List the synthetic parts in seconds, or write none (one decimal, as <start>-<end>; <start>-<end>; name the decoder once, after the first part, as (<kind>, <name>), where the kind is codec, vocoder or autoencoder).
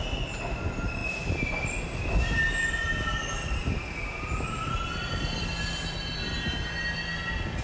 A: 1.0-4.7 (vocoder, BigVGAN v2)